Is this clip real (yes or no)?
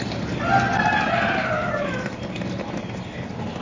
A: yes